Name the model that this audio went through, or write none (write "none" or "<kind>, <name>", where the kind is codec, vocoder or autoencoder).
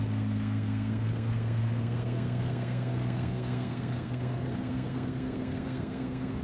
codec, SNAC